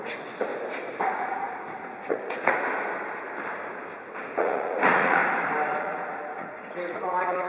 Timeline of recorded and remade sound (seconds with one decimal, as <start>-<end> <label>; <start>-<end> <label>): 0.0-0.5 remade; 0.5-1.1 recorded; 1.1-2.6 remade; 2.6-4.4 recorded; 4.4-5.2 remade; 5.2-5.8 recorded; 5.8-7.5 remade